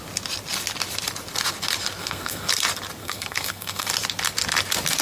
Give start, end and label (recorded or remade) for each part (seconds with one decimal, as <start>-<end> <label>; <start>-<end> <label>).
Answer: 0.0-2.0 recorded; 2.0-2.5 remade; 2.5-3.0 recorded; 3.0-3.9 remade; 3.9-5.0 recorded